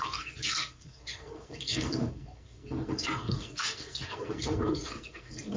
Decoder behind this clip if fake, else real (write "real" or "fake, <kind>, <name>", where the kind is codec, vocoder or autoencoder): fake, codec, SNAC